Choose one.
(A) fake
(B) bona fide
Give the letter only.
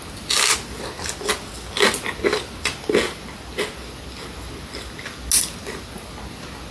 B